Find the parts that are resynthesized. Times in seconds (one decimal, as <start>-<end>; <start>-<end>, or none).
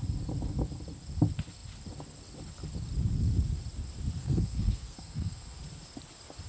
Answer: 4.2-5.6